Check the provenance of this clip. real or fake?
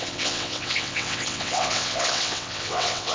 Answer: fake